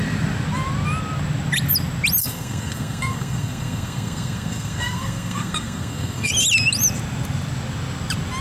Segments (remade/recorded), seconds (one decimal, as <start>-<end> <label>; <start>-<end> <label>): 0.0-2.2 recorded; 2.2-6.3 remade; 6.3-8.4 recorded